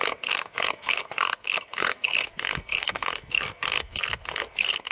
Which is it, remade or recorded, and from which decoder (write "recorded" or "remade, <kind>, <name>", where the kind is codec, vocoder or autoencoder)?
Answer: remade, codec, SNAC